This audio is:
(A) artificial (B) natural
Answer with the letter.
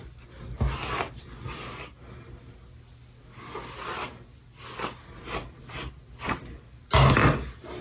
B